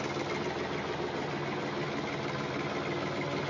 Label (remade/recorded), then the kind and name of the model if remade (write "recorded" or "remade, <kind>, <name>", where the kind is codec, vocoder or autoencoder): recorded